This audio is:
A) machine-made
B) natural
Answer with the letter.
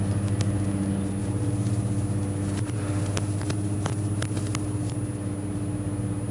B